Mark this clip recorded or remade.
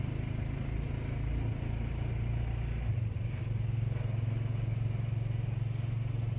recorded